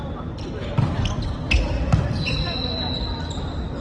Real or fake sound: real